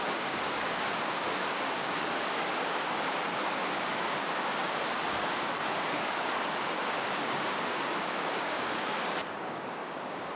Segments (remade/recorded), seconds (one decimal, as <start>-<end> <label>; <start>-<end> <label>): 0.0-10.4 remade